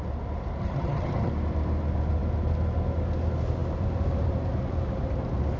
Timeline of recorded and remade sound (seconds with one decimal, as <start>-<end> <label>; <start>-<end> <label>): 0.0-0.6 recorded; 0.6-1.3 remade; 1.3-5.6 recorded